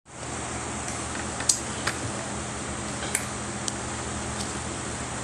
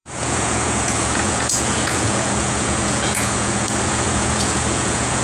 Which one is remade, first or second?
second